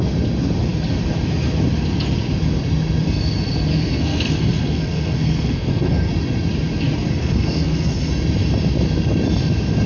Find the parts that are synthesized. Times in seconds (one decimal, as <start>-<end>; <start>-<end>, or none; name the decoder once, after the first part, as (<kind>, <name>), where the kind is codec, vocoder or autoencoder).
3.7-6.1 (codec, SNAC); 7.1-8.1